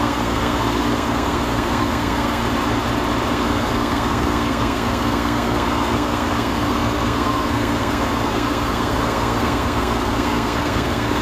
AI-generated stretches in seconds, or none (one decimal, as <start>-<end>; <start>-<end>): 0.0-2.4; 3.3-11.2